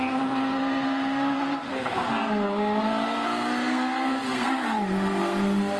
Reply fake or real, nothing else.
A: fake